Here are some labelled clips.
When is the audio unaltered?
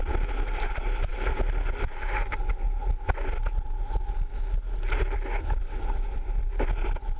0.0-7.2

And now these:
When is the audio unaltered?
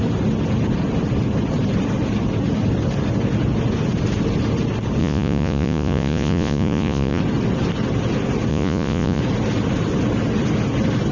0.0-5.0; 7.2-8.5; 9.2-11.1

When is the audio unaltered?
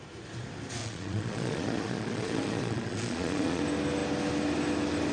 0.0-0.8; 3.6-5.1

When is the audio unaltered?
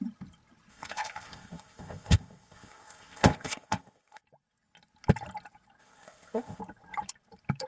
0.0-0.7; 4.2-5.8; 6.6-7.7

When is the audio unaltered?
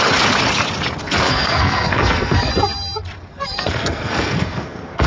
0.0-1.0; 2.5-3.3